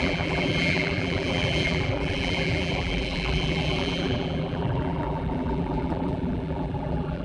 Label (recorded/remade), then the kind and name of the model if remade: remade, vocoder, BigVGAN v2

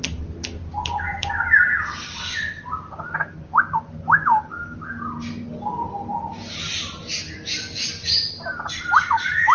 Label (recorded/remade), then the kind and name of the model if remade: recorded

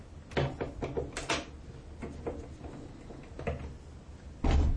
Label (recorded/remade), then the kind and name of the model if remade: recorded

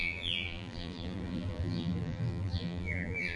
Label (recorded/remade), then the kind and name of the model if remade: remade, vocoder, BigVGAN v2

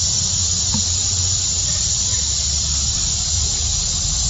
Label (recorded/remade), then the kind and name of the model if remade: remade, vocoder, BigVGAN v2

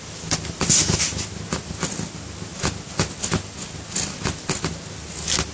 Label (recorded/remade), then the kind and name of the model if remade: recorded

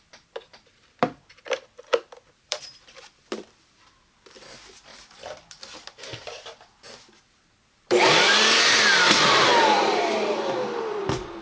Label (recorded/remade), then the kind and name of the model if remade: remade, vocoder, BigVGAN v2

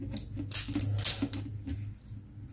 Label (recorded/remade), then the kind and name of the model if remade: recorded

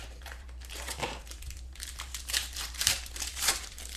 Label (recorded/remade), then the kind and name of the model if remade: remade, vocoder, BigVGAN v2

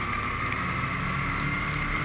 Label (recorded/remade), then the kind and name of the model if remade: recorded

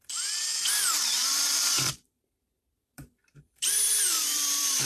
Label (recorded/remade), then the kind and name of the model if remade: remade, vocoder, BigVGAN v2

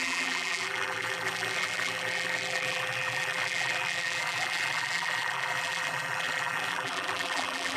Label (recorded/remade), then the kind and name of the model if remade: remade, vocoder, BigVGAN v2